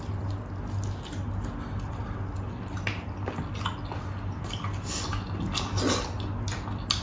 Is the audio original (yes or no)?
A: yes